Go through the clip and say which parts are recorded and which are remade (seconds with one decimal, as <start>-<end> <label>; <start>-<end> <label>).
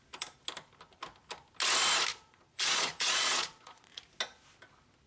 0.0-2.1 recorded; 2.1-4.0 remade; 4.0-5.1 recorded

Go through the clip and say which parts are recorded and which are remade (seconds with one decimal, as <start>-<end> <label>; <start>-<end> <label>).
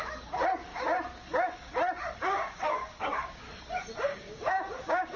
0.0-0.7 recorded; 0.7-1.7 remade; 1.7-2.2 recorded; 2.2-3.5 remade; 3.5-4.1 recorded; 4.1-5.2 remade